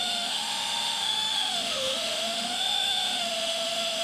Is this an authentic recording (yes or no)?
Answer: no